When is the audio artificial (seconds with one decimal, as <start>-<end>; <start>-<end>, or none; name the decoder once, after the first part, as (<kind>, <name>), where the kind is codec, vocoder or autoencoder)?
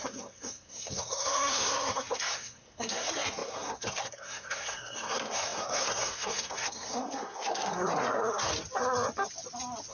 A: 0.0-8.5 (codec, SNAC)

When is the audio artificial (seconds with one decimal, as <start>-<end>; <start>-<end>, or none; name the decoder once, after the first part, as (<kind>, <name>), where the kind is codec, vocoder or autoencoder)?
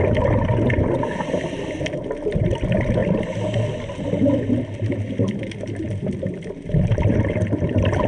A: none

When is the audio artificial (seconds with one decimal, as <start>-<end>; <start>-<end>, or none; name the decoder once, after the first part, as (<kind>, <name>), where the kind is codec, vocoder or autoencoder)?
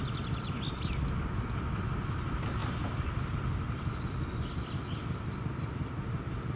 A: none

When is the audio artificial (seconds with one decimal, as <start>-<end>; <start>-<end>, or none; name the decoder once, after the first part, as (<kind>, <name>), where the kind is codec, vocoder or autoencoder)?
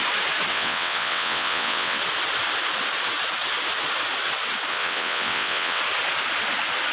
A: 0.5-2.0 (vocoder, WaveNeXt); 4.7-5.8